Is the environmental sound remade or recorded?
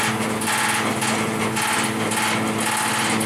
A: recorded